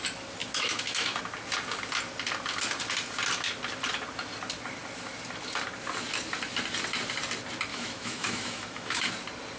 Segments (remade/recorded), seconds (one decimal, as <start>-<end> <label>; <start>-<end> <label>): 0.0-0.4 recorded; 0.4-1.2 remade; 1.2-7.7 recorded; 7.7-9.1 remade; 9.1-9.6 recorded